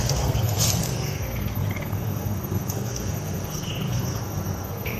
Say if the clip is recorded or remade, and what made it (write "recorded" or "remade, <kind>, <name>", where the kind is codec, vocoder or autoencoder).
remade, codec, SNAC